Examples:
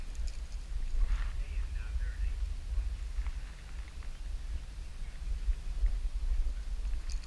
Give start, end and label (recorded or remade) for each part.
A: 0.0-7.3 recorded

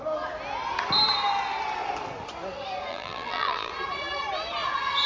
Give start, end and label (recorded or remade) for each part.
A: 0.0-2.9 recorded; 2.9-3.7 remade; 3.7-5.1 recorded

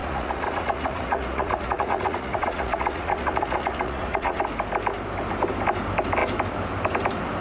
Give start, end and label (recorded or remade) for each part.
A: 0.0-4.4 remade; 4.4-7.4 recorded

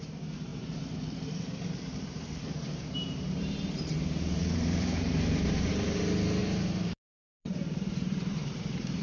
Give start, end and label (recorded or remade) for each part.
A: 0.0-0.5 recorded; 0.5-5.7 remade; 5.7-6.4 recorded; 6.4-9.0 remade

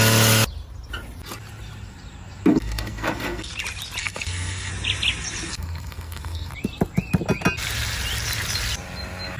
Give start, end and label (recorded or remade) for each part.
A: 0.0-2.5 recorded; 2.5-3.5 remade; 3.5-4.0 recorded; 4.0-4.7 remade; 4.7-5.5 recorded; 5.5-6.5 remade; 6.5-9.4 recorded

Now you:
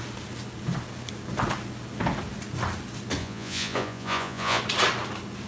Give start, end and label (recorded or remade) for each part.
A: 0.0-3.2 recorded; 3.2-4.6 remade; 4.6-5.5 recorded

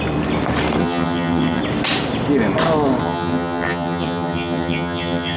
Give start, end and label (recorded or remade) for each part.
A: 0.0-0.8 recorded; 0.8-1.6 remade; 1.6-3.0 recorded; 3.0-5.4 remade

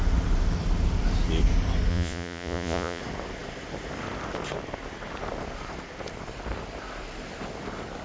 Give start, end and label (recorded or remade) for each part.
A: 0.0-1.9 recorded; 1.9-3.0 remade; 3.0-8.0 recorded